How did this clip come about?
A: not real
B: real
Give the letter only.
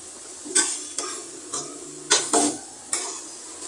B